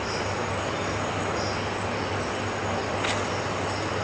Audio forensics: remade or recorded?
recorded